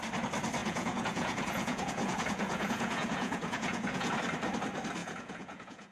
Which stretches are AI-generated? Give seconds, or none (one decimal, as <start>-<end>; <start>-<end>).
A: 0.6-4.1; 5.0-5.9